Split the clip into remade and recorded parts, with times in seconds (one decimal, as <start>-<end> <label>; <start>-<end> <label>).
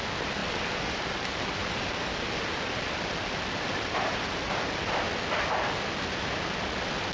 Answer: 0.0-0.4 recorded; 0.4-4.7 remade; 4.7-7.1 recorded